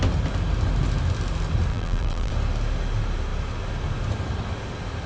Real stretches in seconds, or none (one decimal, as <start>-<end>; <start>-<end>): 0.0-1.7; 2.3-5.1

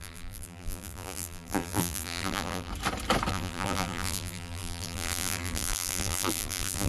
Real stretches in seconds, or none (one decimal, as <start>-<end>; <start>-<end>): 2.7-3.3

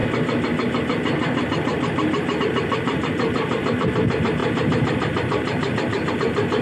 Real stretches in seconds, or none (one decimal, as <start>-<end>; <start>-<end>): 0.0-2.4

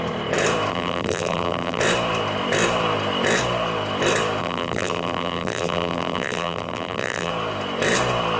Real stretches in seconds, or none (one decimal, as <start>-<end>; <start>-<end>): 0.0-0.7; 1.8-4.4; 7.3-8.4

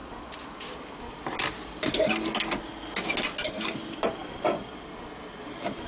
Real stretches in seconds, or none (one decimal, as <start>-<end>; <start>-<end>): 0.0-5.9

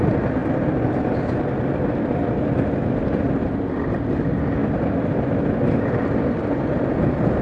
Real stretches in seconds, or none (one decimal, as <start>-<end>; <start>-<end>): 0.0-7.4